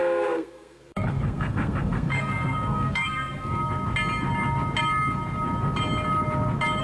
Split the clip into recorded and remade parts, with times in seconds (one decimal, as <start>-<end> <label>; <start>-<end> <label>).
0.0-3.6 remade; 3.6-6.8 recorded